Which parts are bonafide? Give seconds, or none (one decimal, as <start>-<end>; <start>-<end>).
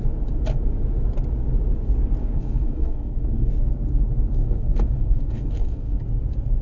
0.0-2.2; 3.5-4.4; 6.0-6.6